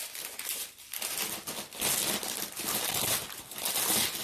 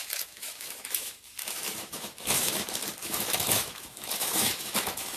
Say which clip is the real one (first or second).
first